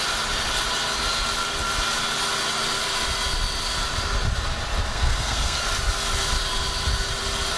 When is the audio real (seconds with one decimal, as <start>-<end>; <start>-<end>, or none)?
0.0-4.9; 5.6-7.6